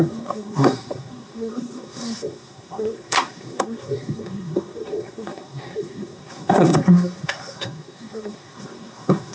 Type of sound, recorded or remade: remade